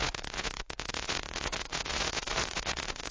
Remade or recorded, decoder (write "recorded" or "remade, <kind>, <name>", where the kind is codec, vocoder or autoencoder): remade, vocoder, Vocos